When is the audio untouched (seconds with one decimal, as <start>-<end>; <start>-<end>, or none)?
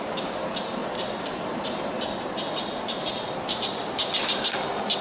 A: 0.0-5.0